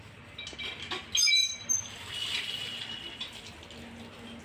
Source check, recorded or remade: recorded